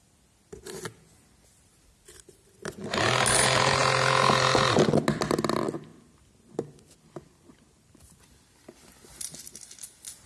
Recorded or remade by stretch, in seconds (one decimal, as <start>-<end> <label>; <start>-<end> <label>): 0.0-10.3 recorded